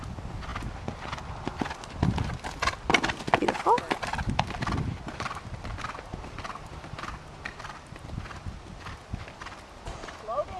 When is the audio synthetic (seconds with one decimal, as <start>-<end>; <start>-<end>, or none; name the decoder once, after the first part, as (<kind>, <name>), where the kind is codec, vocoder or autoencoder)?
none